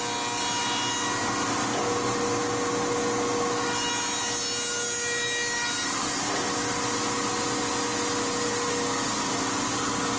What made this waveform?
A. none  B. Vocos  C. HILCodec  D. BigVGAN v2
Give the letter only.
A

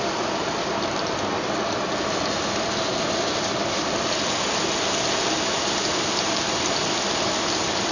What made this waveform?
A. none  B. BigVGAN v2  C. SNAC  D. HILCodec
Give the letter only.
A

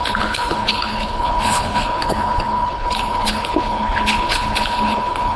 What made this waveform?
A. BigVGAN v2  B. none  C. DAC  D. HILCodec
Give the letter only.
D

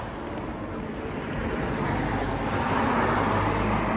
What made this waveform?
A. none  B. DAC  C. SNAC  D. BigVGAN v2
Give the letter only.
A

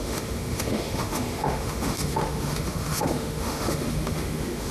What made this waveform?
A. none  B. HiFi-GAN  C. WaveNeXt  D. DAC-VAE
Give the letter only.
D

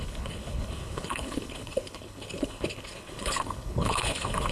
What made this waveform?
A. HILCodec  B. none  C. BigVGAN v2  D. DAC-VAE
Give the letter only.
A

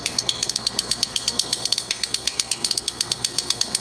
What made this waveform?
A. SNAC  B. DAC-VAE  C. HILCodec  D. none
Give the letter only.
A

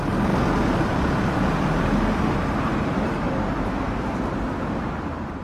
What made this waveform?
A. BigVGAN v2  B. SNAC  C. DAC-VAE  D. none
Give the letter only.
D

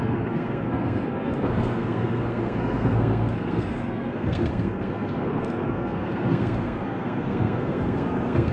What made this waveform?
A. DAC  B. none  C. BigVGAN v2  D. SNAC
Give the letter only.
D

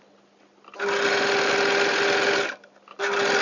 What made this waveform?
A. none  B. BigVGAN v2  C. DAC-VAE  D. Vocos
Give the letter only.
A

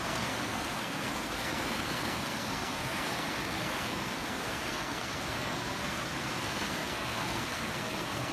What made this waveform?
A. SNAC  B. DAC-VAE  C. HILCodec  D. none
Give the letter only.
A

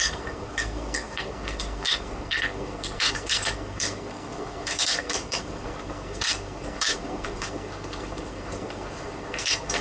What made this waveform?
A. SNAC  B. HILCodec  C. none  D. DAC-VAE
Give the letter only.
A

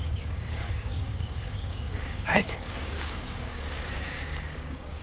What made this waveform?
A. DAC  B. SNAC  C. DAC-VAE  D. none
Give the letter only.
A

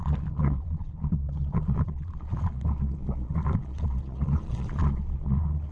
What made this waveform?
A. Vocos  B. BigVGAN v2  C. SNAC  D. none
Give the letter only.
A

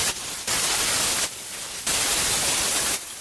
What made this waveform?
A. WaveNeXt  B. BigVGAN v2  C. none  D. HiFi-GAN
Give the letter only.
C